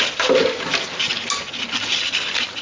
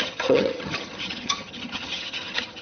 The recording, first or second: first